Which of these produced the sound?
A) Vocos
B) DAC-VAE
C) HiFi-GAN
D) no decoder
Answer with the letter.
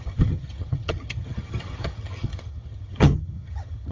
C